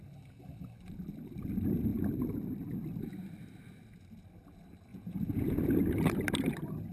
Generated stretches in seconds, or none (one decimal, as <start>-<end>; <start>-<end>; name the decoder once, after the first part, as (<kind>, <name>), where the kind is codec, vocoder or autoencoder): 4.9-5.6 (vocoder, Vocos)